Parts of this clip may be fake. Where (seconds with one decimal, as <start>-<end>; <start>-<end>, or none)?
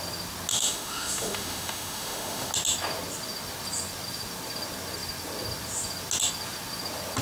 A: 0.5-2.5